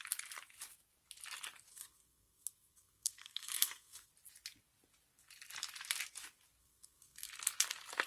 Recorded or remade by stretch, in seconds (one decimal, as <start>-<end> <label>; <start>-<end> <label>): 0.0-1.7 recorded; 1.7-4.1 remade; 4.1-6.6 recorded; 6.6-7.3 remade; 7.3-8.1 recorded